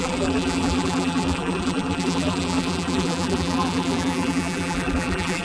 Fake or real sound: fake